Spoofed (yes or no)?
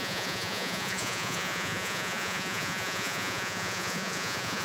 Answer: yes